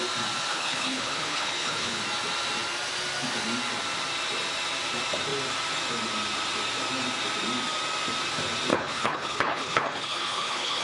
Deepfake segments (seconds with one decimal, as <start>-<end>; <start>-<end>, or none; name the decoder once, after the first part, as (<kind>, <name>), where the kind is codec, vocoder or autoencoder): 0.5-2.0 (codec, HILCodec); 8.7-10.8